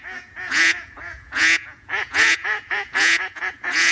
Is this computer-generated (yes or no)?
yes